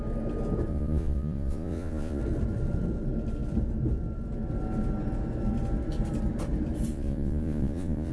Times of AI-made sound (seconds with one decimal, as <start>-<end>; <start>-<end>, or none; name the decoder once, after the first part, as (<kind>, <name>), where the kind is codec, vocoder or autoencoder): 0.7-2.2 (vocoder, Vocos); 6.9-8.1